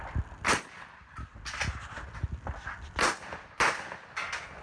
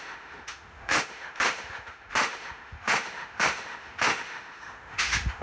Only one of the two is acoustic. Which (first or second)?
first